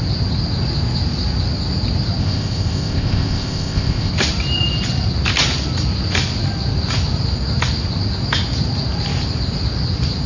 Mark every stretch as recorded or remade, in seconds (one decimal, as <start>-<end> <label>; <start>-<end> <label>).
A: 0.0-2.2 recorded; 2.2-4.1 remade; 4.1-10.3 recorded